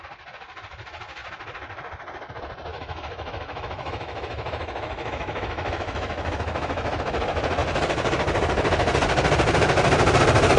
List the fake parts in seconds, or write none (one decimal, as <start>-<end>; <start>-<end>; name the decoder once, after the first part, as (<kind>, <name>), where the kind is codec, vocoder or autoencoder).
2.7-7.0 (autoencoder, DAC-VAE)